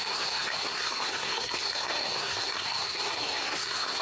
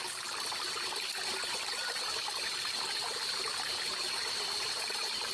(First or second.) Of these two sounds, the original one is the second